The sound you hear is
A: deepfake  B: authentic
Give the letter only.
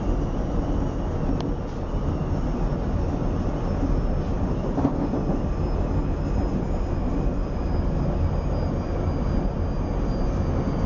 B